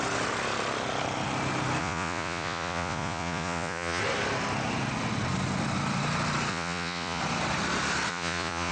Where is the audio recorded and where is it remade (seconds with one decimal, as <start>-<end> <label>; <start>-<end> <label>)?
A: 0.0-1.8 recorded; 1.8-4.0 remade; 4.0-6.5 recorded; 6.5-7.2 remade; 7.2-8.1 recorded; 8.1-8.7 remade